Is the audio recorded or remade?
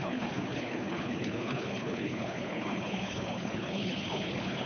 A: remade